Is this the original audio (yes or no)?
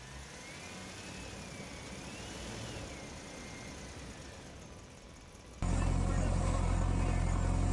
yes